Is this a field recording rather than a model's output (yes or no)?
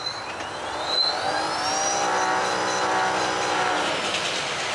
yes